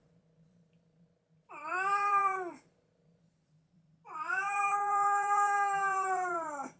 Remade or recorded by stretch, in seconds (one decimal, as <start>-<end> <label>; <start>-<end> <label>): 0.0-6.8 remade